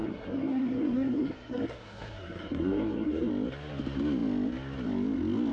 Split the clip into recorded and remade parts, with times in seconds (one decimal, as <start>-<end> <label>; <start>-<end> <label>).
0.0-3.3 remade; 3.3-5.5 recorded